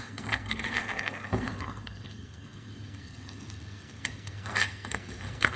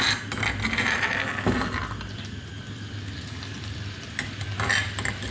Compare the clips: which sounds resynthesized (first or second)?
first